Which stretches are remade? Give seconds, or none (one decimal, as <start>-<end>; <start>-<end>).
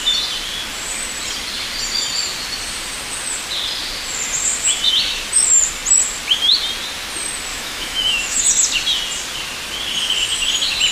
7.5-8.4